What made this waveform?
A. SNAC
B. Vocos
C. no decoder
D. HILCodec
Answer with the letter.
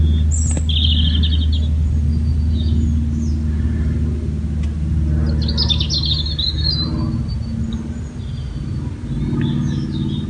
C